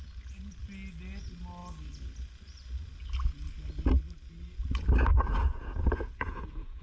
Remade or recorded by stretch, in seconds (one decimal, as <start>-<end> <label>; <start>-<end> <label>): 0.0-5.1 recorded; 5.1-6.8 remade